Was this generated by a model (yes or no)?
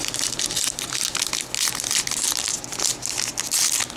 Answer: no